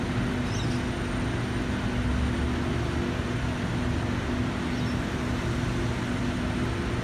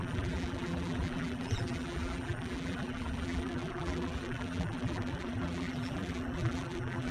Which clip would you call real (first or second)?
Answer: first